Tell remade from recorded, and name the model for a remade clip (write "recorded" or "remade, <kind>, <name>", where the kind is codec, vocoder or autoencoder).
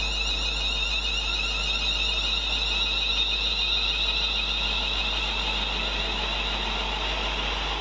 recorded